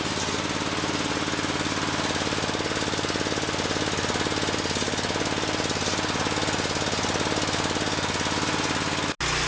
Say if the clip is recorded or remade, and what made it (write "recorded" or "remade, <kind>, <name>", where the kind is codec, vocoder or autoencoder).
recorded